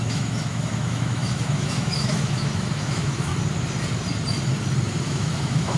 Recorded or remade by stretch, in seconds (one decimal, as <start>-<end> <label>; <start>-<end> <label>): 0.0-3.3 remade; 3.3-5.0 recorded; 5.0-5.8 remade